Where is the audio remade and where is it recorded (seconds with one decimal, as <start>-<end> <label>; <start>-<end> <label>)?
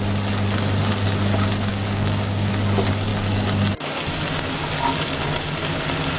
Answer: 0.0-1.7 recorded; 1.7-2.5 remade; 2.5-6.2 recorded